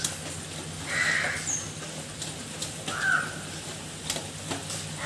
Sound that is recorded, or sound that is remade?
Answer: recorded